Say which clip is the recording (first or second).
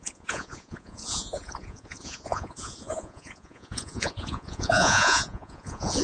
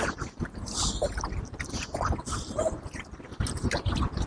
second